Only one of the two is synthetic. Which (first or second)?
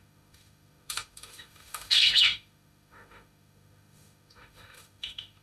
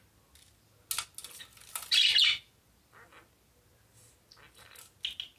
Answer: first